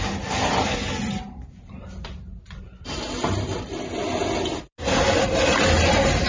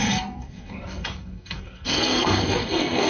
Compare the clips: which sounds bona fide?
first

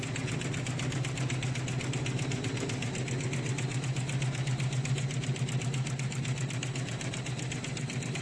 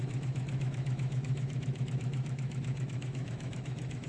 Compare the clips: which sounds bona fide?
first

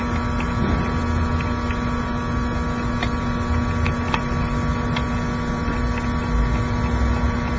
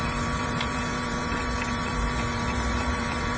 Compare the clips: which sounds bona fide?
first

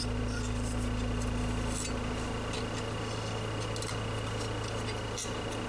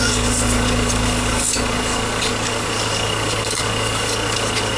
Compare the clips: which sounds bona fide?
first